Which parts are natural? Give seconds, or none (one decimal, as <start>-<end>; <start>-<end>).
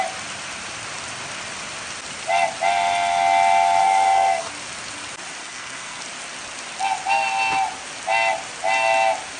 0.0-3.8; 4.5-5.4; 6.0-9.4